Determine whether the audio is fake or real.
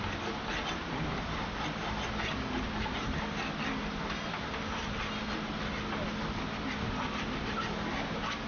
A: real